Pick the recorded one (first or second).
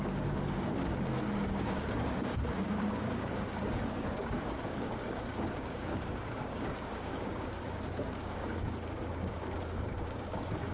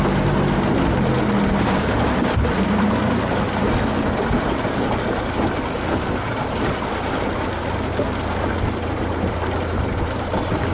second